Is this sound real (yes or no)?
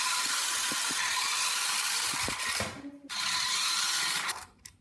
no